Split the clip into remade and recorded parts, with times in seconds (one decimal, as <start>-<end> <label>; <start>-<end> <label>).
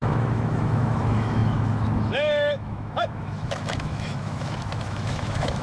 0.0-5.6 remade